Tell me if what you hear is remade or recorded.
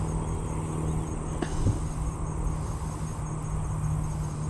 recorded